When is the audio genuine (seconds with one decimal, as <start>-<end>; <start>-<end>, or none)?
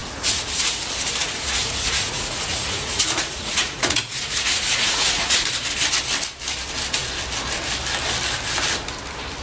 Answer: 0.5-1.2; 5.4-9.4